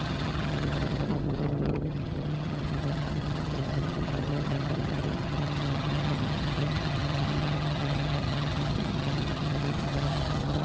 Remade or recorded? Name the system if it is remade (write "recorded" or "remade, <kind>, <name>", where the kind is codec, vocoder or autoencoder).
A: remade, vocoder, HiFi-GAN